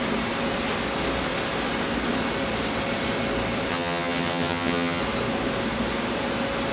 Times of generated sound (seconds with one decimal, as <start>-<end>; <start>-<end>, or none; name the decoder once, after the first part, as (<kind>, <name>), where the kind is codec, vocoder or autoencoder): 3.7-5.0 (vocoder, HiFi-GAN)